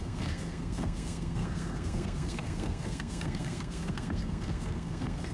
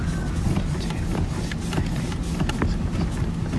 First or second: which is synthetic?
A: first